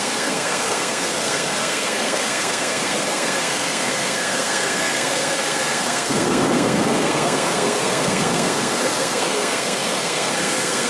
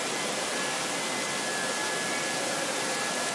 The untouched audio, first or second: second